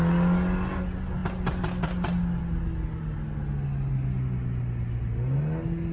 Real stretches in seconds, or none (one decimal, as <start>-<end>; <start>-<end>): 0.0-5.9